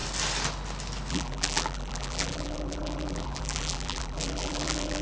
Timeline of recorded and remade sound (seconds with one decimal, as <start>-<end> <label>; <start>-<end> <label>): 0.0-1.1 recorded; 1.1-5.0 remade